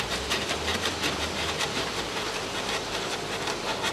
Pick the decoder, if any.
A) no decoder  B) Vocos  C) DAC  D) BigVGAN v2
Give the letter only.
D